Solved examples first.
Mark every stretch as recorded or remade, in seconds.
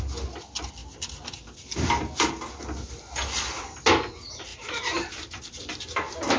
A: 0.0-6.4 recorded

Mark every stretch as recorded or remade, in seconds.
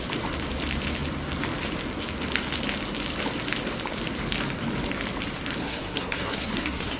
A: 0.0-5.6 recorded; 5.6-7.0 remade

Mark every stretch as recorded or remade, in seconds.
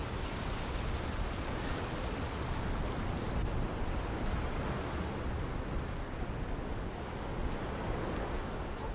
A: 0.0-8.9 recorded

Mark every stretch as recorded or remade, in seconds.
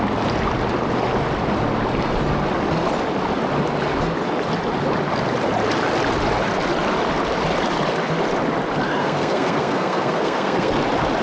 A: 0.0-9.0 recorded; 9.0-10.7 remade; 10.7-11.2 recorded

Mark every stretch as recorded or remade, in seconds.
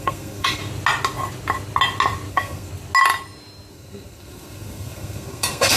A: 0.0-0.6 remade; 0.6-2.3 recorded; 2.3-2.7 remade; 2.7-3.7 recorded; 3.7-5.8 remade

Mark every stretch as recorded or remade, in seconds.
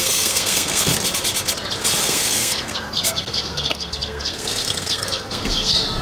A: 0.0-0.9 remade; 0.9-2.0 recorded; 2.0-6.0 remade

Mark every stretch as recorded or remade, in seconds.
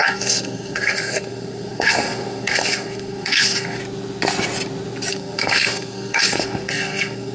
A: 0.0-3.8 remade; 3.8-5.1 recorded; 5.1-7.3 remade